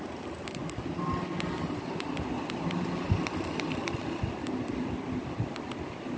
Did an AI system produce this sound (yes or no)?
no